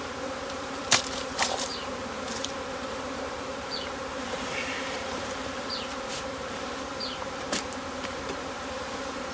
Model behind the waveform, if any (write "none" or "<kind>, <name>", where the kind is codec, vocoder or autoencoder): vocoder, BigVGAN v2